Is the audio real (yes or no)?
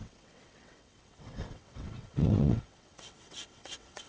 no